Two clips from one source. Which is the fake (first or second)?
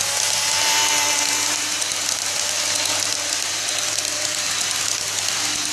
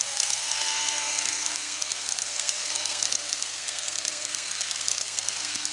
second